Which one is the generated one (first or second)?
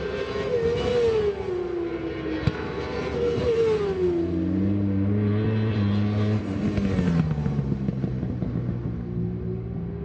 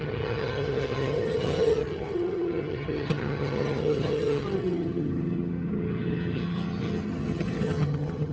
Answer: second